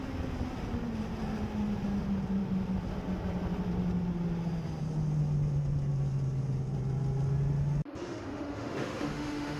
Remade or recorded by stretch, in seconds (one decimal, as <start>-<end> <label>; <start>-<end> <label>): 0.0-8.0 recorded; 8.0-9.6 remade